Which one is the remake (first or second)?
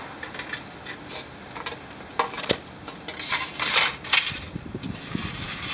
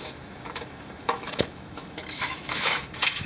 second